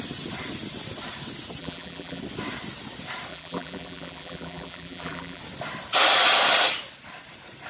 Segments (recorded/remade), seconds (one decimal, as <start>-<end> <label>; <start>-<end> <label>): 0.0-1.6 recorded; 1.6-2.2 remade; 2.2-3.3 recorded; 3.3-5.4 remade; 5.4-7.7 recorded

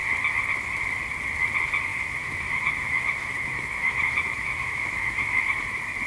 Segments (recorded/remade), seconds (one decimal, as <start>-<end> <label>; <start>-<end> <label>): 0.0-1.9 recorded; 1.9-5.6 remade; 5.6-6.1 recorded

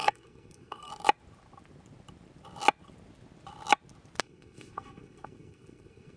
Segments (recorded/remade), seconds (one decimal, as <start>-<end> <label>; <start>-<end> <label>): 0.0-0.9 remade; 0.9-4.2 recorded; 4.2-6.2 remade

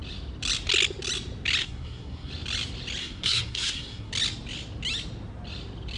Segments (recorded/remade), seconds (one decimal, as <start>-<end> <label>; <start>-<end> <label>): 0.0-1.6 recorded; 1.6-2.3 remade; 2.3-3.0 recorded; 3.0-4.1 remade; 4.1-6.0 recorded

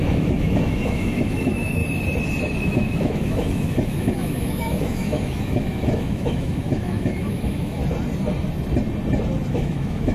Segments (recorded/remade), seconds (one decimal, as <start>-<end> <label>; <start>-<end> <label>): 0.0-1.8 remade; 1.8-2.6 recorded; 2.6-7.8 remade; 7.8-9.5 recorded; 9.5-10.1 remade